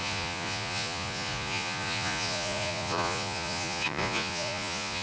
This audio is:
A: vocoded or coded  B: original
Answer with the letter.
A